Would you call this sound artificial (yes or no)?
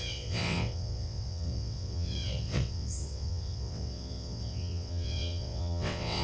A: yes